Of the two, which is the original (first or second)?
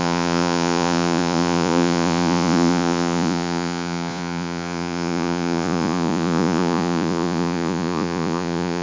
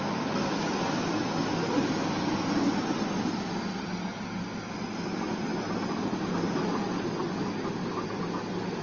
second